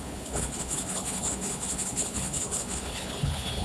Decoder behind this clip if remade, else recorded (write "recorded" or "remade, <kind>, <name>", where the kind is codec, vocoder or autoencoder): remade, codec, HILCodec